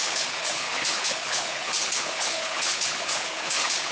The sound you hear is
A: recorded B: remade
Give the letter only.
B